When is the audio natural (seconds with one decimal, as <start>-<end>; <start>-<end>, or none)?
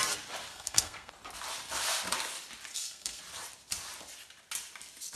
0.0-0.5; 1.1-2.7; 3.2-5.2